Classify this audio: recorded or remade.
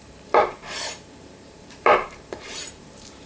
remade